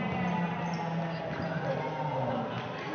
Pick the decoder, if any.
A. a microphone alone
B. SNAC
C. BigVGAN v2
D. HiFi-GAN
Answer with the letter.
A